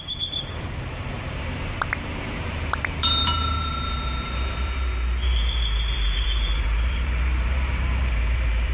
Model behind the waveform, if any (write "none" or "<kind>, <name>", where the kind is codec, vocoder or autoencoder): vocoder, BigVGAN v2